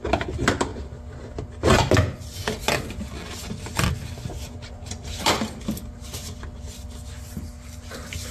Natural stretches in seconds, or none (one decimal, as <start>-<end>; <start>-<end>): 0.0-8.3